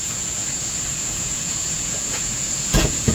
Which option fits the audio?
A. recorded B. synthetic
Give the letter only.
B